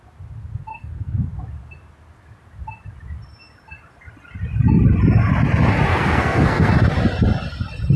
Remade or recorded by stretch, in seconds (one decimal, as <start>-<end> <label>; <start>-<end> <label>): 0.0-0.7 recorded; 0.7-1.3 remade; 1.3-5.9 recorded; 5.9-6.7 remade; 6.7-8.0 recorded